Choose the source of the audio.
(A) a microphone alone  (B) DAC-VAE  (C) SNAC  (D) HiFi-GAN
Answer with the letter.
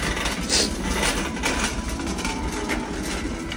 A